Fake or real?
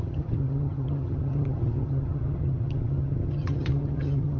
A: fake